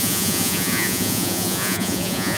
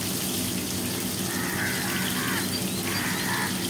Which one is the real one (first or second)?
second